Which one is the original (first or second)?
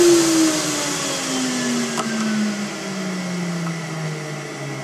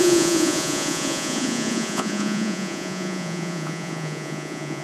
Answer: first